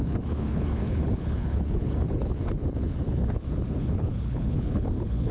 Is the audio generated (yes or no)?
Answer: yes